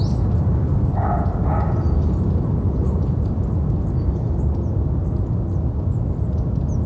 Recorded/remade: recorded